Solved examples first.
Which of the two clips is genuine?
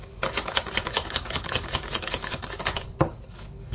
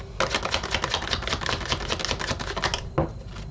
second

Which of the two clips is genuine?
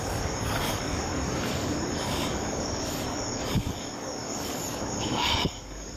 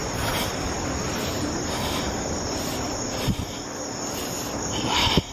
second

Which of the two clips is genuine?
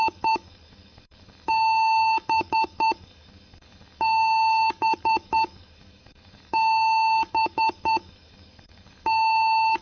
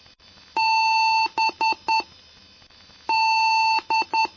second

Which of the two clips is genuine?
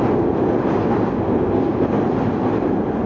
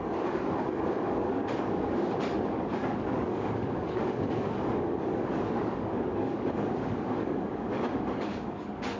first